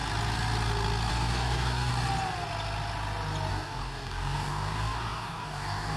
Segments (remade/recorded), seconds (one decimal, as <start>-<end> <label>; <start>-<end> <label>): 0.0-1.1 recorded; 1.1-1.9 remade; 1.9-3.5 recorded; 3.5-6.0 remade